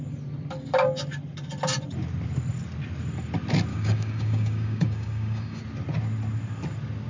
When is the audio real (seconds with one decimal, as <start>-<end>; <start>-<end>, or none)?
0.0-3.7; 5.6-7.1